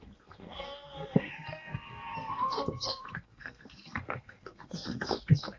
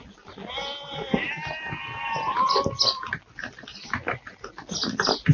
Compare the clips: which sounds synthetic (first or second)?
first